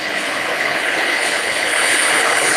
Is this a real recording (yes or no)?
no